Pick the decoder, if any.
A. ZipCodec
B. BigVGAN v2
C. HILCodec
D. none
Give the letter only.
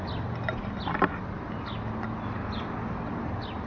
D